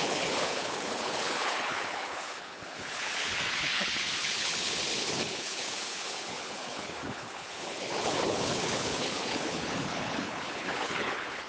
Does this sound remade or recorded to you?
remade